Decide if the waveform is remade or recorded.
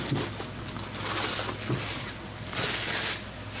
recorded